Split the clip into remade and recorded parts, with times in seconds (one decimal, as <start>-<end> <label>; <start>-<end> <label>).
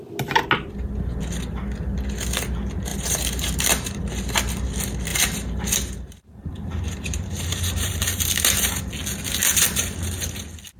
0.0-2.9 recorded; 2.9-4.0 remade; 4.0-5.1 recorded; 5.1-8.8 remade; 8.8-10.8 recorded